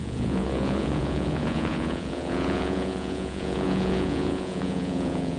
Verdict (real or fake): fake